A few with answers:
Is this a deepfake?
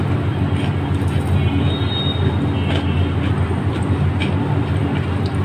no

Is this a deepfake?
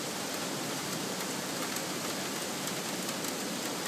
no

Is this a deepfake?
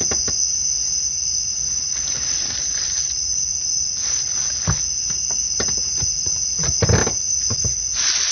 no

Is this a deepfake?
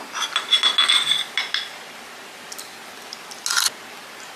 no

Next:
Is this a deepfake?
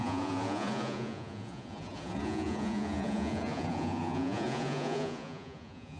yes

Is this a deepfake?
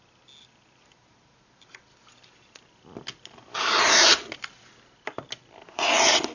no